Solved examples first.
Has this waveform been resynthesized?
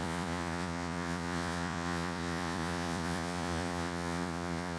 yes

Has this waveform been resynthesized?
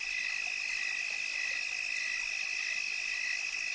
no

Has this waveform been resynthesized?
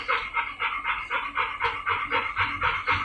no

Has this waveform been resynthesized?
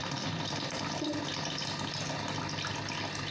no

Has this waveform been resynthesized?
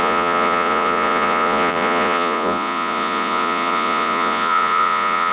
yes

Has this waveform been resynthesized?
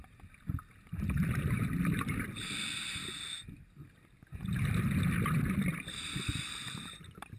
no